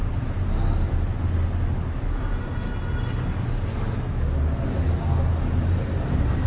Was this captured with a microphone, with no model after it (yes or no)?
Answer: yes